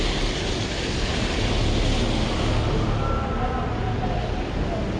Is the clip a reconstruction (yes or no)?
no